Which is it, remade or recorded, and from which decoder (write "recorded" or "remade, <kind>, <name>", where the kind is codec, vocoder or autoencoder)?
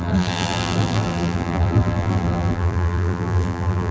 remade, vocoder, BigVGAN v2